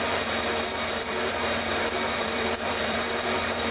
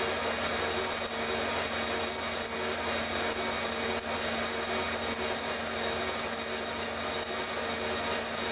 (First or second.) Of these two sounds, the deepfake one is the first